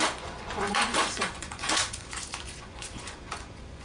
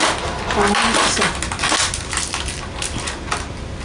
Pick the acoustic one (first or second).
second